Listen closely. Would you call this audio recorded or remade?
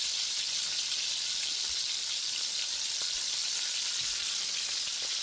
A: recorded